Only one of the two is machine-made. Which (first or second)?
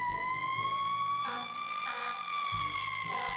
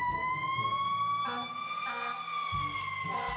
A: first